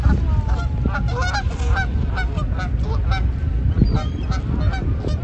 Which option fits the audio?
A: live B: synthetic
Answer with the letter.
A